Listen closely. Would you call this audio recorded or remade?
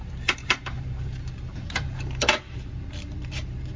remade